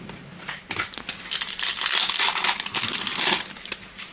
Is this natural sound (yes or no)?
yes